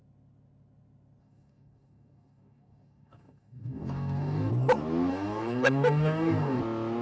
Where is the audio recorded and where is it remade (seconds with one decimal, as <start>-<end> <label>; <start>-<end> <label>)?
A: 0.0-1.2 recorded; 1.2-4.5 remade; 4.5-5.1 recorded; 5.1-6.6 remade; 6.6-7.0 recorded